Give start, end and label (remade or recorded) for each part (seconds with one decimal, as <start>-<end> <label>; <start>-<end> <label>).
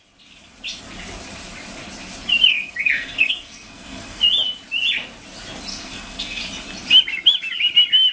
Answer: 0.0-2.5 recorded; 2.5-4.2 remade; 4.2-5.7 recorded; 5.7-6.4 remade; 6.4-8.1 recorded